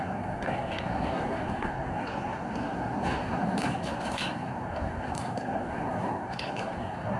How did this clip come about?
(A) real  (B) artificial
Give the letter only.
B